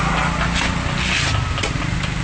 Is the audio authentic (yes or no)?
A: yes